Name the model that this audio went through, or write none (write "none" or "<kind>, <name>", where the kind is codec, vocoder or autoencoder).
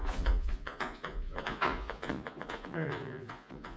vocoder, Vocos